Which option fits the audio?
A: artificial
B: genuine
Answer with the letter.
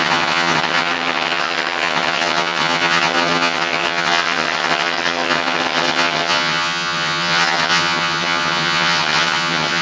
A